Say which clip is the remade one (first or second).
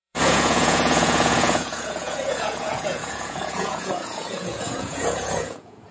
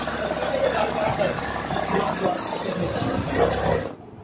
first